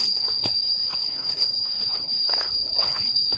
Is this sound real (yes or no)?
no